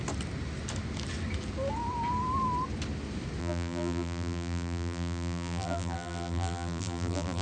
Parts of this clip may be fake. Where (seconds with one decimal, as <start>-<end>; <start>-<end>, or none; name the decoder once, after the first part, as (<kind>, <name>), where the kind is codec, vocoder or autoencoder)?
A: 3.4-7.4 (vocoder, BigVGAN v2)